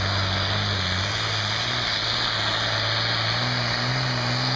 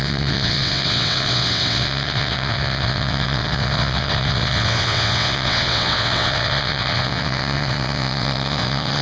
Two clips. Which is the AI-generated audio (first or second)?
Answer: second